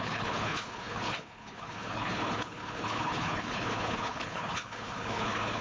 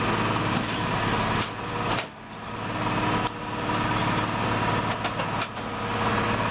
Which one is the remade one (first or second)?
first